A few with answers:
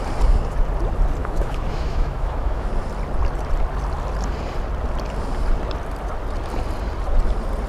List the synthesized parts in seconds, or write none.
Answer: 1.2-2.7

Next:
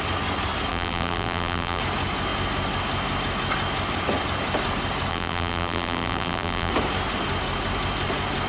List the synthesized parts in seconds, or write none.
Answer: 0.7-1.8; 5.1-6.7

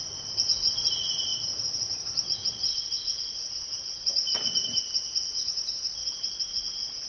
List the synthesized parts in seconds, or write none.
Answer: none

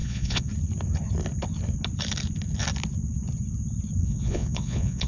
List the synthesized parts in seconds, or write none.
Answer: 0.0-0.5; 4.0-5.1

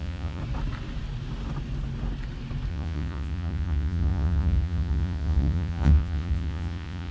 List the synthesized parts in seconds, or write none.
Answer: 0.0-0.4; 2.7-7.1

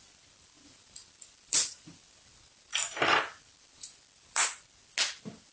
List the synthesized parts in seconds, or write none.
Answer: 0.0-4.4; 5.0-5.5

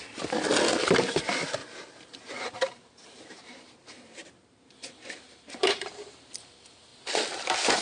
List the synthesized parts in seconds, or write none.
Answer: 1.6-6.3

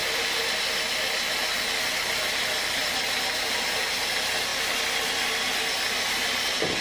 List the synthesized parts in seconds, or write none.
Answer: none